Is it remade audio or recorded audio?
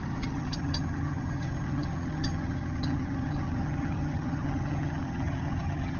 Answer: remade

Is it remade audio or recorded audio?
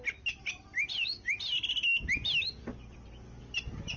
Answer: recorded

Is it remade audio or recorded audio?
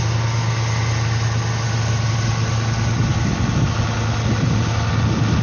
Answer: recorded